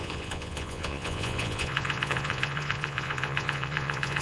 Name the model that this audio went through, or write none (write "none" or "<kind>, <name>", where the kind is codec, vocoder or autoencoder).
vocoder, Vocos